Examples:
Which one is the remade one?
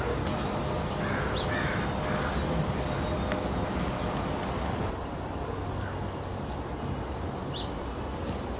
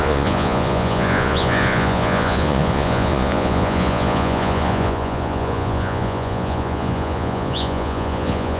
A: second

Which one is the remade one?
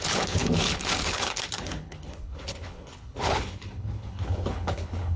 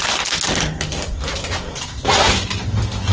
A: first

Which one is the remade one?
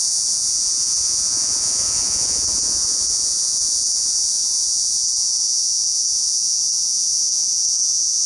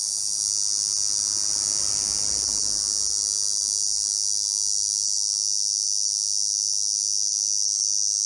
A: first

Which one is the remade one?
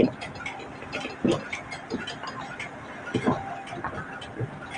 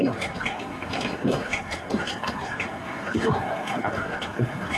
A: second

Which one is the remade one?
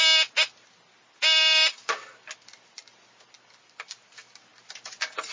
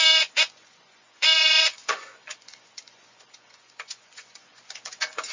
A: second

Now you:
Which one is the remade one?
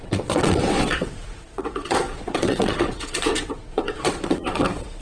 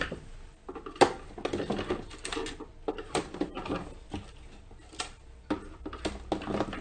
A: first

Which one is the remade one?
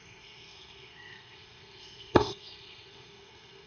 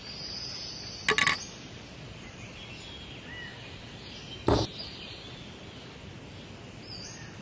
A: first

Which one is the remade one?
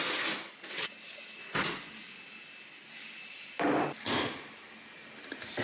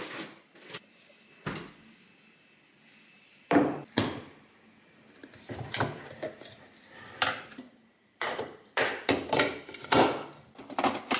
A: second